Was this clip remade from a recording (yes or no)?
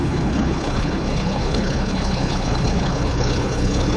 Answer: yes